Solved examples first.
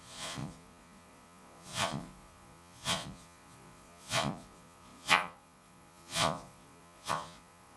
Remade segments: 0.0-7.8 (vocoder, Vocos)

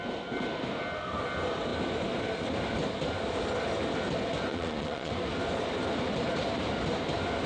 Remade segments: 4.5-5.1 (vocoder, Vocos)

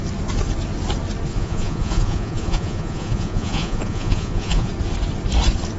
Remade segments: 1.3-4.7 (vocoder, Vocos)